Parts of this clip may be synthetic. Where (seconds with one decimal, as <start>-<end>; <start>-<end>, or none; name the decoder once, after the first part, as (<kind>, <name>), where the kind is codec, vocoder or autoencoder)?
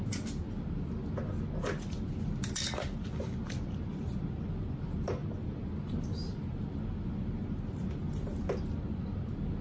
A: none